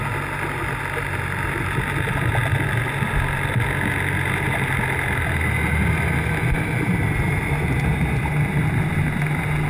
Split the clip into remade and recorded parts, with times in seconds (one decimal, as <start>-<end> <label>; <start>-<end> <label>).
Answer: 0.0-9.7 recorded